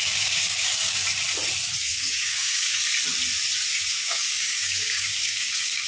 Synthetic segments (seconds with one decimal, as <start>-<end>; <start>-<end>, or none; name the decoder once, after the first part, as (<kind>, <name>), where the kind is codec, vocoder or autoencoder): 0.0-1.0 (codec, DAC); 1.8-2.8; 3.7-5.9